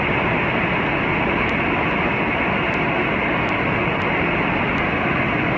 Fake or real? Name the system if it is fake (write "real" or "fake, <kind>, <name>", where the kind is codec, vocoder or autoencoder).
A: real